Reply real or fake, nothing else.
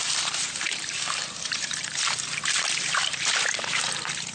fake